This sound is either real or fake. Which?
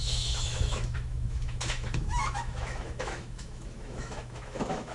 fake